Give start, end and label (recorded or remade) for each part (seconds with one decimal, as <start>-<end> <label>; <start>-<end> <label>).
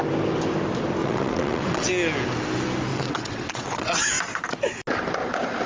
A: 0.0-1.0 recorded; 1.0-1.9 remade; 1.9-2.9 recorded; 2.9-4.1 remade; 4.1-5.7 recorded